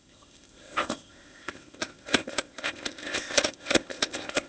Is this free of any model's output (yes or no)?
no